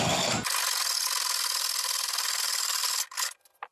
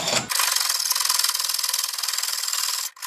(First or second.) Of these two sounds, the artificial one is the first